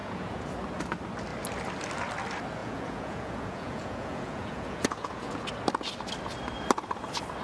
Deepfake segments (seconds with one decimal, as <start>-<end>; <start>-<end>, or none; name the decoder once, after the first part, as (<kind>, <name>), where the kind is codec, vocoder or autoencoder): 0.0-0.5 (vocoder, Vocos); 2.6-5.4